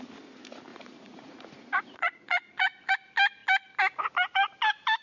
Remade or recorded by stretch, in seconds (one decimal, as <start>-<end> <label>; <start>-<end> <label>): 0.0-0.7 recorded; 0.7-2.9 remade; 2.9-5.0 recorded